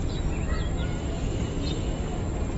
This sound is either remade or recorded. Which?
recorded